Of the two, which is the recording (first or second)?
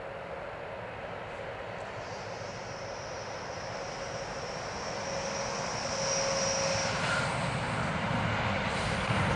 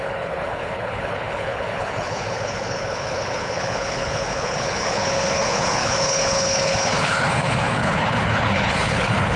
first